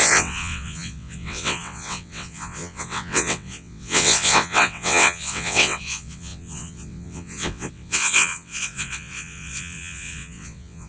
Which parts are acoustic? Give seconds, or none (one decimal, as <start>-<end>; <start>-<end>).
none